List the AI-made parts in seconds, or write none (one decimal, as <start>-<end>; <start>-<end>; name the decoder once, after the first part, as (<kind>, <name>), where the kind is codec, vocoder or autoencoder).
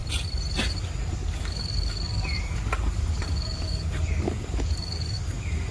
1.1-5.7 (codec, DAC)